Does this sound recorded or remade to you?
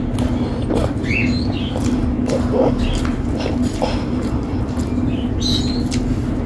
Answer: recorded